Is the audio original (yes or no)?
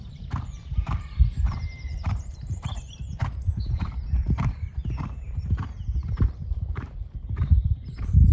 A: no